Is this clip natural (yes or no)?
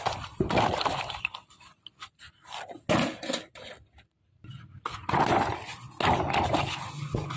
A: yes